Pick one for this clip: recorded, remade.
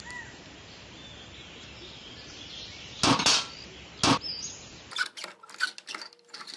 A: recorded